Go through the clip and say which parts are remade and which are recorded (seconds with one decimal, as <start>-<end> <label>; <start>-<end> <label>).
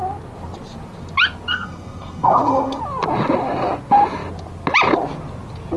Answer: 0.0-1.5 recorded; 1.5-2.8 remade; 2.8-5.8 recorded